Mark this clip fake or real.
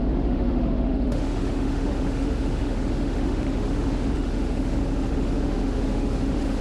fake